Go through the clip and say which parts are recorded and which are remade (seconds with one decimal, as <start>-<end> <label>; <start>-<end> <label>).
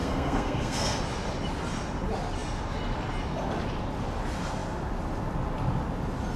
0.0-1.0 remade; 1.0-6.4 recorded